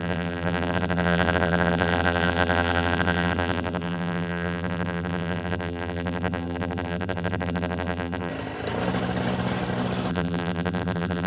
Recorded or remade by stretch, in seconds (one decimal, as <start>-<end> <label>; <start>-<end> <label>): 0.0-8.3 remade; 8.3-10.1 recorded; 10.1-11.3 remade